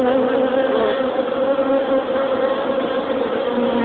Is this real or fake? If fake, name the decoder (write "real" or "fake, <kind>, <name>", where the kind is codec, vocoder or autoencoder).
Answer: real